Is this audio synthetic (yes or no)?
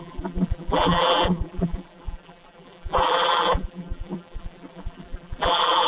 yes